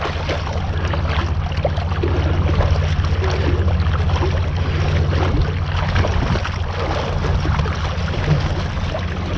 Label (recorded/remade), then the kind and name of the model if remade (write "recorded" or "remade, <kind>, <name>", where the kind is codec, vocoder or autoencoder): recorded